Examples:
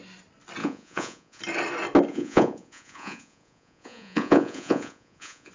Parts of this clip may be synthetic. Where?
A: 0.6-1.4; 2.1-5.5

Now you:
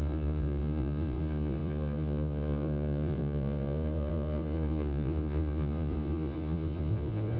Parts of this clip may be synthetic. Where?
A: 0.0-7.4

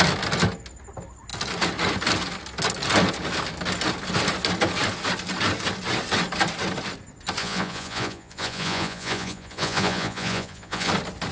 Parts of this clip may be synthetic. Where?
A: 7.4-10.9